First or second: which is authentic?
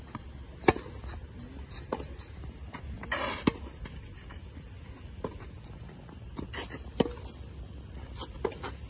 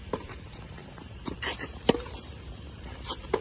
first